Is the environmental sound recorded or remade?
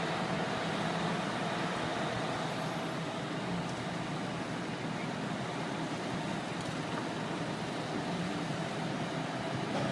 recorded